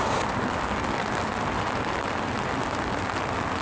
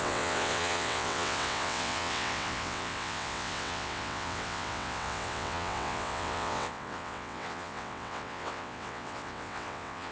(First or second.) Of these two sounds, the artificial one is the second